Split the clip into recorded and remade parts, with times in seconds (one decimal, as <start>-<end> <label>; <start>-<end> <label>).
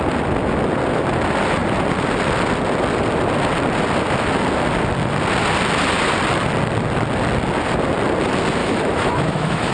0.0-8.6 recorded; 8.6-9.7 remade